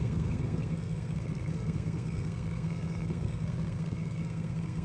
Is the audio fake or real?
fake